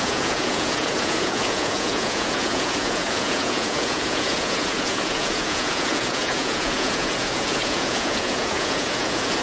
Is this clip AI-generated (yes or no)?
yes